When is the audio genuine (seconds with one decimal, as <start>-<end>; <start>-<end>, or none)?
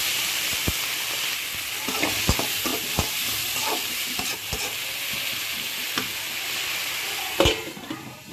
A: 0.0-2.7; 4.7-8.3